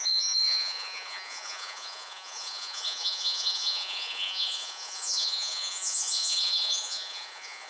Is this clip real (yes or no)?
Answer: no